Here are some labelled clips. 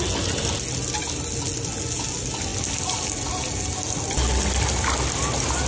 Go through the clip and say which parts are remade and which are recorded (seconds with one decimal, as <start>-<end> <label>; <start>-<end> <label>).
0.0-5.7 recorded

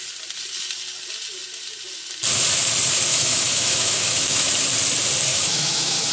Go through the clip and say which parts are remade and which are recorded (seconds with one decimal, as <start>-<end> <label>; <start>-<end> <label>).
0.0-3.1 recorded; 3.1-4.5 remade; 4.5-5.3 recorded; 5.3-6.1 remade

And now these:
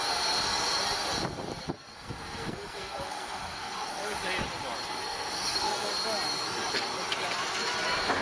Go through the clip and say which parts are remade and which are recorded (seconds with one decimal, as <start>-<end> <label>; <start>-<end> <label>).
0.0-1.6 recorded; 1.6-4.2 remade; 4.2-5.0 recorded; 5.0-5.9 remade; 5.9-8.2 recorded

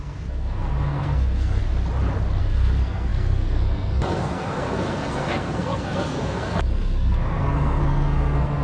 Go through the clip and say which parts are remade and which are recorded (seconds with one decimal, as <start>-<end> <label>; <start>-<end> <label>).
0.0-1.6 remade; 1.6-2.4 recorded; 2.4-8.6 remade